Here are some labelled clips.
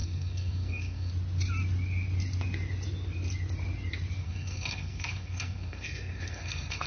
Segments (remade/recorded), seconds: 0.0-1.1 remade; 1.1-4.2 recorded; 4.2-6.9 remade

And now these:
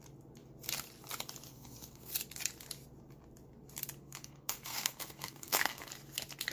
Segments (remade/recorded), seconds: 0.0-1.5 recorded; 1.5-2.1 remade; 2.1-4.0 recorded; 4.0-5.9 remade; 5.9-6.5 recorded

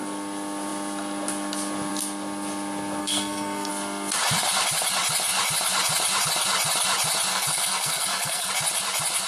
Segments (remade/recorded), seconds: 0.0-3.0 recorded; 3.0-3.7 remade; 3.7-7.3 recorded; 7.3-8.5 remade; 8.5-9.3 recorded

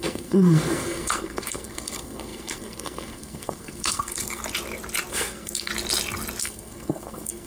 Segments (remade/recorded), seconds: 0.0-4.4 remade; 4.4-5.1 recorded; 5.1-5.7 remade; 5.7-6.4 recorded; 6.4-7.5 remade

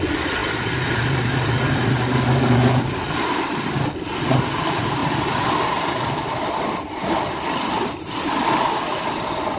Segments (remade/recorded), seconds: 0.0-9.6 recorded

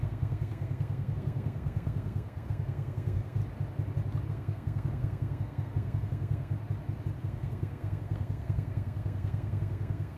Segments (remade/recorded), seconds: 0.0-3.4 remade; 3.4-4.3 recorded; 4.3-6.5 remade; 6.5-7.2 recorded; 7.2-10.2 remade